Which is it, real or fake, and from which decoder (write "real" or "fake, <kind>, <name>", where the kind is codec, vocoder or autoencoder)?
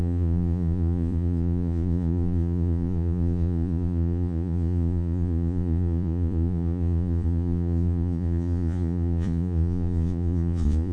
fake, vocoder, Vocos